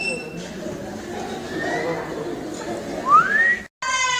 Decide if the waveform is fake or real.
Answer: real